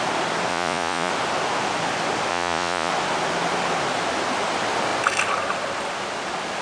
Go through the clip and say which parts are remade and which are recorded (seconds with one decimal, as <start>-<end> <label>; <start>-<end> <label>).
0.0-0.5 recorded; 0.5-1.1 remade; 1.1-2.3 recorded; 2.3-2.9 remade; 2.9-6.6 recorded